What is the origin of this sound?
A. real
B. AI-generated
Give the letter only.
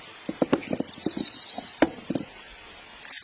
A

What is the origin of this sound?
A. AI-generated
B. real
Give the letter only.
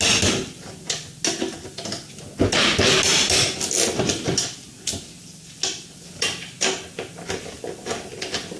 B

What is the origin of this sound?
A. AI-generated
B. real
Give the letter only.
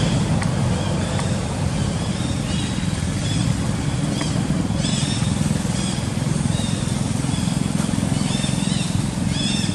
A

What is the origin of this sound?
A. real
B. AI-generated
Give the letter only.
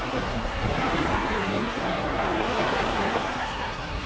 B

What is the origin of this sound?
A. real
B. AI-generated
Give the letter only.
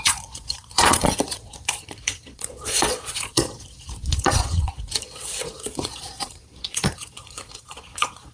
B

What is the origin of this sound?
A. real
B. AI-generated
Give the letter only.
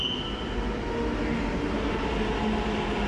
A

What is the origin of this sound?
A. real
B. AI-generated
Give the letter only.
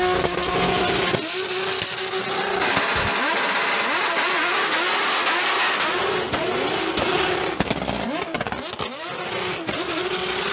A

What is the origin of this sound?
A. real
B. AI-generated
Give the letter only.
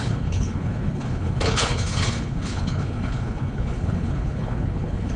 B